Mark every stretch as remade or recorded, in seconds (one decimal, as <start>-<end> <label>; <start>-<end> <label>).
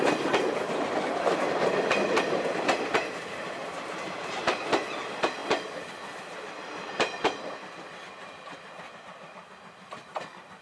0.0-10.6 recorded